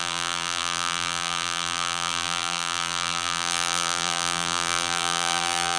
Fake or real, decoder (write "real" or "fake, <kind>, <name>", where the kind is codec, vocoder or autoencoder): fake, vocoder, BigVGAN v2